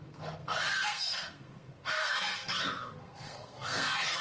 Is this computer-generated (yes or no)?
yes